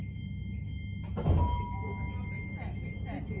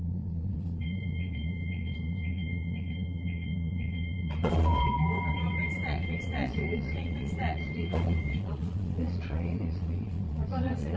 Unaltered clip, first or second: first